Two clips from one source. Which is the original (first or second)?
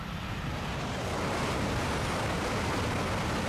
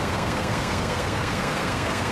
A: first